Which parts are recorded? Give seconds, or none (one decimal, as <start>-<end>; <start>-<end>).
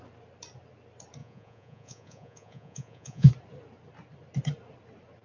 0.0-1.2; 3.3-5.2